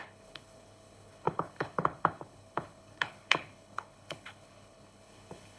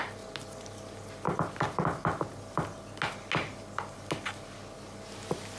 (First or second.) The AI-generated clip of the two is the first